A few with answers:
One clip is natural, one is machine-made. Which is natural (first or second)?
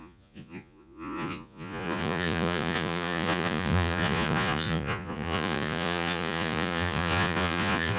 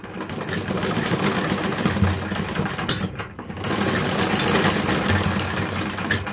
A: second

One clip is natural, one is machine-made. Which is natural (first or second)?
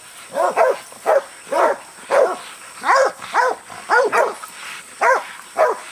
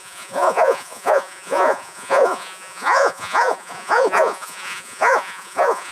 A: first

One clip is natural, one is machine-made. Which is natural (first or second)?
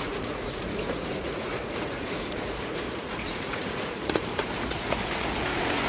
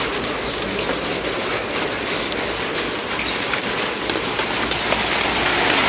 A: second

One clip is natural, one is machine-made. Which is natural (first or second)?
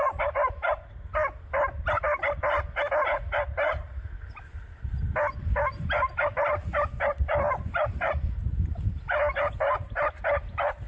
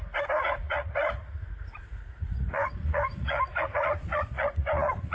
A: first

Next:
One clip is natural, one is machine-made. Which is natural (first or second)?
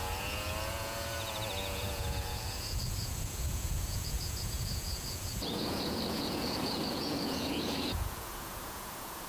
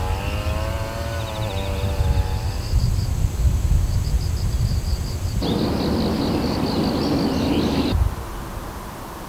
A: second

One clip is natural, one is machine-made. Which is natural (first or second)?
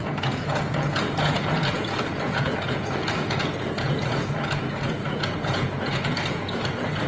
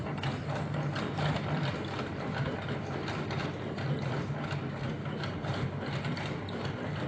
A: second